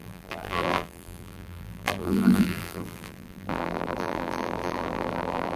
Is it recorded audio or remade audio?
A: remade